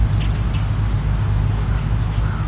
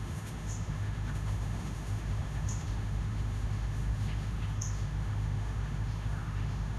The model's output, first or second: second